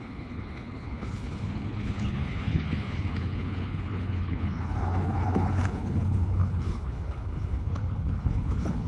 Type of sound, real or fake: fake